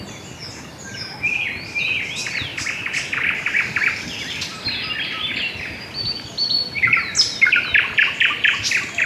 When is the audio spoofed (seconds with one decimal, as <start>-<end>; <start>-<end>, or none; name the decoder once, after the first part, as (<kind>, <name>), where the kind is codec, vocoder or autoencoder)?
none